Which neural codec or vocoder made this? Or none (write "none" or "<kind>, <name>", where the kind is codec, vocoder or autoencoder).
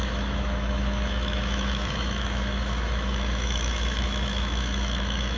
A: autoencoder, DAC-VAE